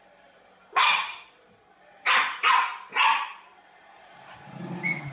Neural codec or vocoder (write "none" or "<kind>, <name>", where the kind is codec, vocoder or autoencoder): none